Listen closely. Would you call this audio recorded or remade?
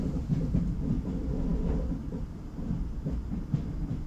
recorded